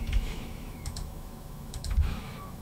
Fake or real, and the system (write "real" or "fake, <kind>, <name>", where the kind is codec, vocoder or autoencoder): fake, autoencoder, DAC-VAE